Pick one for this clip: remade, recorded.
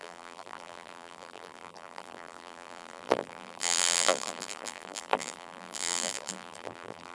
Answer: remade